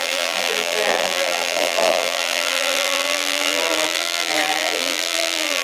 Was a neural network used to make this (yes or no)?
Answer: yes